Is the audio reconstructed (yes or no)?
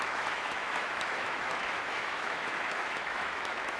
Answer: yes